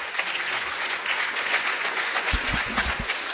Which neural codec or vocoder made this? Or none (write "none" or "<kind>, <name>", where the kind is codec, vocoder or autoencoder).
vocoder, Vocos